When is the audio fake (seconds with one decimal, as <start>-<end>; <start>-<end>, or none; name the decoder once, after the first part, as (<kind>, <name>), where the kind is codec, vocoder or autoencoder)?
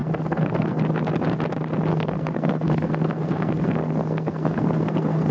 0.0-0.8 (codec, SNAC); 1.9-5.3